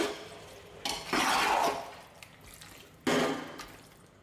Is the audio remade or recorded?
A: recorded